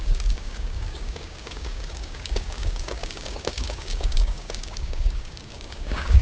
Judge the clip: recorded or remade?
remade